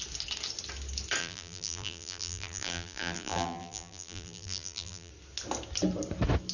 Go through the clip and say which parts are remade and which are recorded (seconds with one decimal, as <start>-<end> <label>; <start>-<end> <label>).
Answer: 0.0-1.2 recorded; 1.2-5.1 remade; 5.1-6.5 recorded